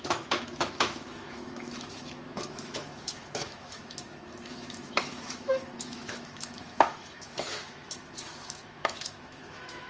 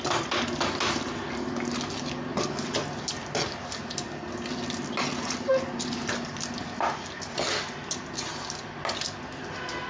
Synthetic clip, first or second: first